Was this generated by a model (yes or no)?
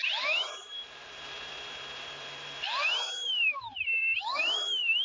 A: yes